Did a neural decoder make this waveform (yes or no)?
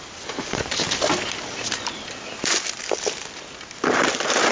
no